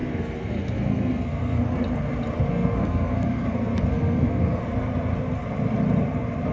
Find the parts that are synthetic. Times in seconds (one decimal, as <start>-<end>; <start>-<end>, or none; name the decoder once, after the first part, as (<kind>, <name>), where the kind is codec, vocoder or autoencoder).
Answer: 0.0-1.6 (codec, SNAC); 2.5-4.6